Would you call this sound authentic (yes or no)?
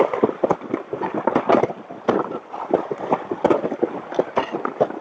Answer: yes